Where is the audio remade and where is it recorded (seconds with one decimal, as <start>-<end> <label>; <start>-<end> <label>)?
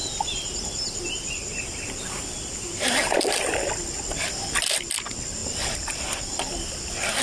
0.0-2.1 remade; 2.1-5.4 recorded; 5.4-6.8 remade; 6.8-7.2 recorded